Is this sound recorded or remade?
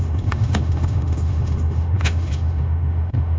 remade